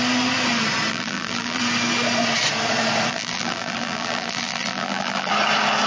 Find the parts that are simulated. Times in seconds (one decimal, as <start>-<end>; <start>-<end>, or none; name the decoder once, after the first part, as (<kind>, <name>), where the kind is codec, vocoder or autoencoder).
0.9-1.6 (vocoder, BigVGAN v2); 3.1-5.3